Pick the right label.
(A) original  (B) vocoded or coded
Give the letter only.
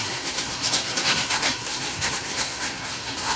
B